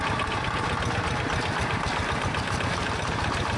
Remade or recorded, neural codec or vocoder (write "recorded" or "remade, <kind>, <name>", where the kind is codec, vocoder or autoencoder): recorded